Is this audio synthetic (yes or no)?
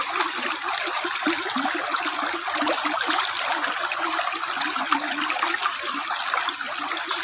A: no